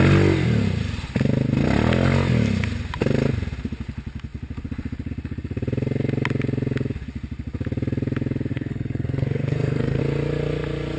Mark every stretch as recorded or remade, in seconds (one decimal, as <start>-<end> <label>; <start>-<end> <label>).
0.0-8.5 recorded; 8.5-10.0 remade; 10.0-11.0 recorded